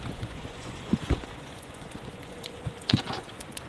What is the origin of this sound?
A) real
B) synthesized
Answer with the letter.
B